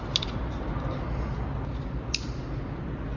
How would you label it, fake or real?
real